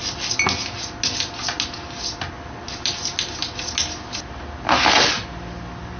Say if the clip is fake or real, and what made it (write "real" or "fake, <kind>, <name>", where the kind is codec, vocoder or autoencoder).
real